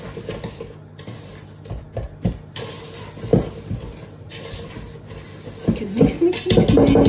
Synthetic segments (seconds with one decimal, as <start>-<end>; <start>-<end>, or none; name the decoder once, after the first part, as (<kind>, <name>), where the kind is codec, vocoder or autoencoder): none